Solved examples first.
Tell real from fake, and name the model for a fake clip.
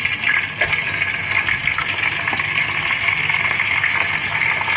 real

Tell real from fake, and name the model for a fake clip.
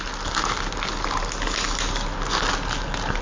real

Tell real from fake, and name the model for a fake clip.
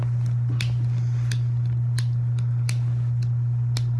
real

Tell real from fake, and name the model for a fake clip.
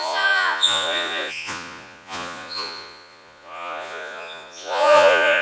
fake, vocoder, Vocos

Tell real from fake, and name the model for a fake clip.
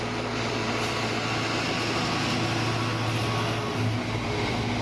real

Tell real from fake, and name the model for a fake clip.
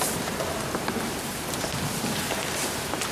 real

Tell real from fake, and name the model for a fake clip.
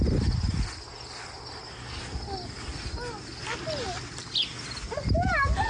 real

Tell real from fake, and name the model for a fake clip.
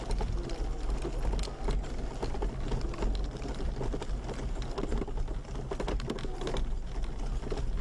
real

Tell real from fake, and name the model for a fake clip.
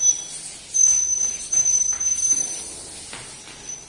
real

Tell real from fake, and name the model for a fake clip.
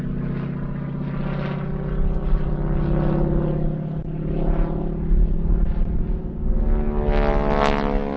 real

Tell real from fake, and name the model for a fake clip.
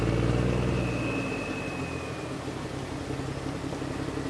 real